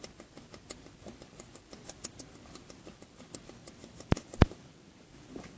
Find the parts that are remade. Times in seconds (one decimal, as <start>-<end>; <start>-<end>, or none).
3.6-5.1

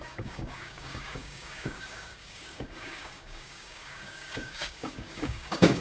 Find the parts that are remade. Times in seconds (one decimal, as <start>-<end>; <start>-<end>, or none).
0.0-5.8